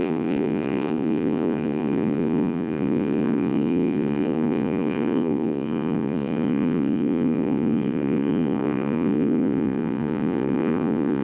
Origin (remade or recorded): remade